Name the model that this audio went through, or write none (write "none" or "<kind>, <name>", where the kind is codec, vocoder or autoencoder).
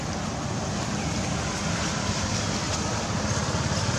none